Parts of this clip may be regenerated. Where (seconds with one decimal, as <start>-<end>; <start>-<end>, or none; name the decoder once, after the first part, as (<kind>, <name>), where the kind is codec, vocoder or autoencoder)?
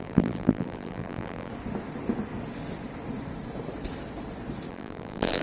0.0-1.5 (vocoder, BigVGAN v2); 4.7-5.4